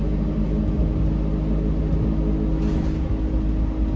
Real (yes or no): yes